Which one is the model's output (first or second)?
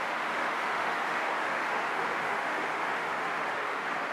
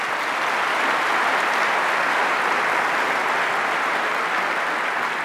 first